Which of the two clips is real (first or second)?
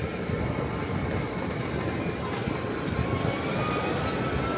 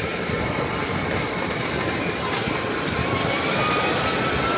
first